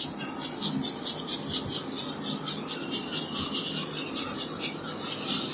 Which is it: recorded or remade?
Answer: recorded